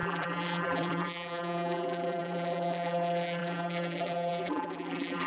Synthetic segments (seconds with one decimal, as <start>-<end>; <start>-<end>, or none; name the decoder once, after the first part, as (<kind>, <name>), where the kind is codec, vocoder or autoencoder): 0.0-5.3 (vocoder, BigVGAN v2)